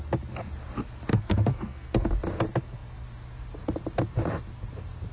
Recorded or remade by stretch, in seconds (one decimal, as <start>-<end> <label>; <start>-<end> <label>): 0.0-1.1 recorded; 1.1-2.1 remade; 2.1-5.1 recorded